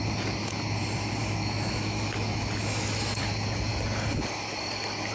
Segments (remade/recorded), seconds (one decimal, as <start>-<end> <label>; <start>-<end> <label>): 0.0-1.2 recorded; 1.2-3.2 remade; 3.2-5.1 recorded